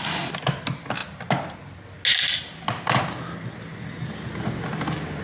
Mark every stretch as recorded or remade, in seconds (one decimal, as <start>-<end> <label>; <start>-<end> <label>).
0.0-5.2 recorded

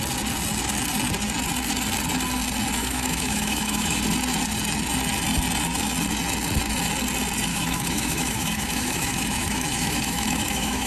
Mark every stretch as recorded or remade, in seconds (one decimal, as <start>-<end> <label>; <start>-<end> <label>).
0.0-2.8 recorded; 2.8-4.0 remade; 4.0-7.5 recorded; 7.5-10.9 remade

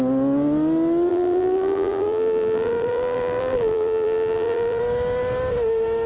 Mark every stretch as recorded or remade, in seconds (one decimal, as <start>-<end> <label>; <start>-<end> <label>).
0.0-1.1 recorded; 1.1-4.8 remade; 4.8-6.1 recorded

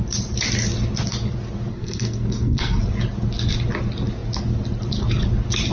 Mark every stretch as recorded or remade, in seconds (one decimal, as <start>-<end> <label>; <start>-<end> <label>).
0.0-1.7 recorded; 1.7-2.8 remade; 2.8-5.7 recorded

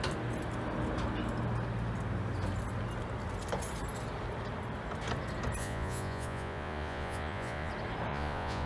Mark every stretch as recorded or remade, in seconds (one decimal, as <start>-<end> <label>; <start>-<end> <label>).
0.0-5.6 recorded; 5.6-7.7 remade; 7.7-8.1 recorded; 8.1-8.7 remade